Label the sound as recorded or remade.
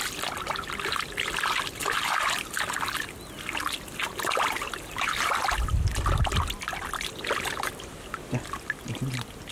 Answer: recorded